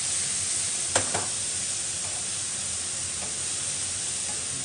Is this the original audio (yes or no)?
yes